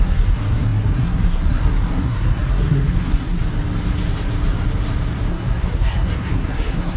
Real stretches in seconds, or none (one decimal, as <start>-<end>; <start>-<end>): 3.4-5.3